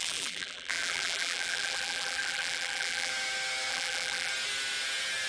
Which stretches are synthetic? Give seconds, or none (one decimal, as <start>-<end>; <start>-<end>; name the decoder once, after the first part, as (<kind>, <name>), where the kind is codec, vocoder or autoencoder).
0.0-3.1 (vocoder, BigVGAN v2); 3.7-4.3